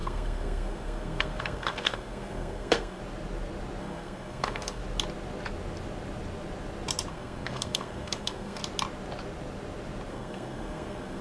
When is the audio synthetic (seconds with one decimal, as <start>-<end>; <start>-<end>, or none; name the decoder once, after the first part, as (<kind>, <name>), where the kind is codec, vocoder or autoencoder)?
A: 0.0-3.0 (codec, SNAC); 3.8-4.8; 7.1-8.6; 10.1-11.2